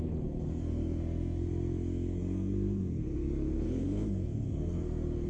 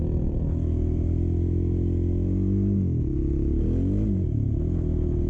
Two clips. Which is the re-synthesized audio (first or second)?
first